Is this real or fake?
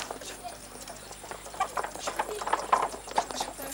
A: fake